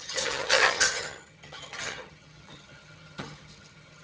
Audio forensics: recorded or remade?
remade